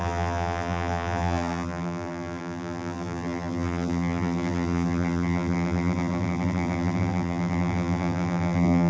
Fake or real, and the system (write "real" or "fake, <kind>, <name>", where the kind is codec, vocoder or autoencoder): fake, vocoder, BigVGAN v2